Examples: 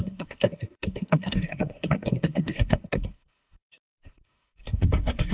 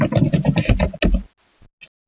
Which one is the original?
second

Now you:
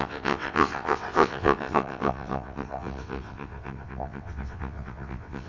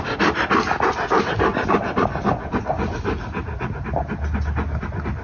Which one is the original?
second